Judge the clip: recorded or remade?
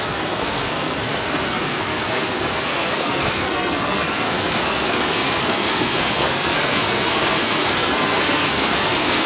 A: remade